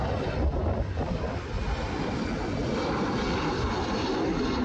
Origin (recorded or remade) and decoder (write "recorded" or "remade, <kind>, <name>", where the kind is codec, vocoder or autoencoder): recorded